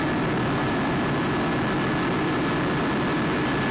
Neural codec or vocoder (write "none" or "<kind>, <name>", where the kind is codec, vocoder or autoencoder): none